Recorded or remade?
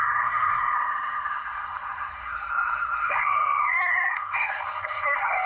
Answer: remade